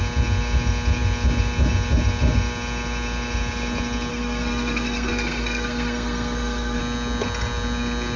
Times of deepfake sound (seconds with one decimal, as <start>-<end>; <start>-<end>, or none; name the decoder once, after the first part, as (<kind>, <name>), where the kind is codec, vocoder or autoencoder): 4.1-6.8 (codec, SNAC)